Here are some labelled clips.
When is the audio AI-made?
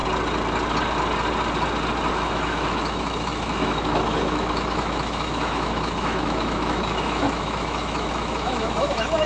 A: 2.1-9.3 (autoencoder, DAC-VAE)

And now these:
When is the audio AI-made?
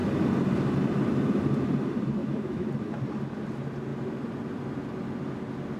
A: 2.2-2.7 (autoencoder, DAC-VAE)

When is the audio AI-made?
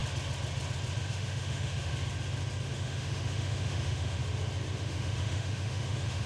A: 1.0-1.9 (autoencoder, DAC-VAE); 2.7-4.2; 4.8-6.3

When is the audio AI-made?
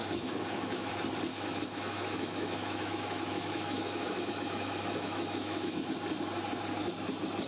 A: 0.0-0.9 (autoencoder, DAC-VAE); 1.3-5.8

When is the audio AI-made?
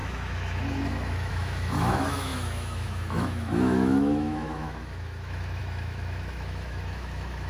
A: 0.0-7.5 (autoencoder, DAC-VAE)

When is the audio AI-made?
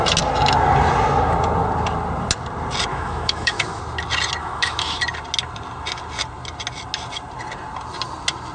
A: 2.9-3.8 (autoencoder, DAC-VAE); 4.4-5.0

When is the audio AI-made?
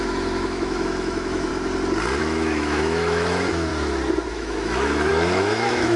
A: 0.0-1.5 (autoencoder, DAC-VAE); 2.2-3.7; 4.3-6.0